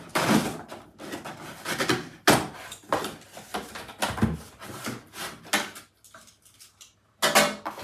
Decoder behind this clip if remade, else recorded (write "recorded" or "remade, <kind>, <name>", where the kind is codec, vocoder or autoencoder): recorded